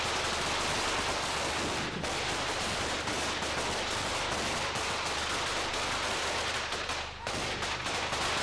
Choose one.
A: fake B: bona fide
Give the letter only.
B